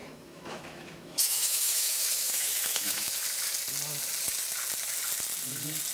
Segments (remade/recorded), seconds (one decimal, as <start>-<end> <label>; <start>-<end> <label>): 0.0-3.1 remade; 3.1-5.9 recorded